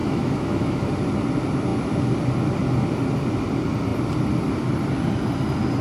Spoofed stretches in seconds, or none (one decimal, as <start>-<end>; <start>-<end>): 0.0-0.9